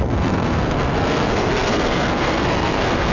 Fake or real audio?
fake